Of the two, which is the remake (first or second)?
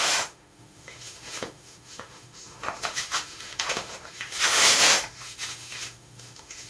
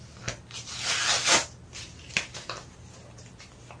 first